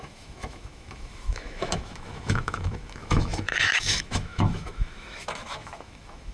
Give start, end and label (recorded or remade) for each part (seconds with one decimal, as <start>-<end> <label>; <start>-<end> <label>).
0.0-6.3 remade